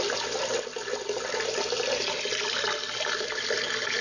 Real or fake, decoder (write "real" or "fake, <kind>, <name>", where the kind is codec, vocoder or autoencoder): real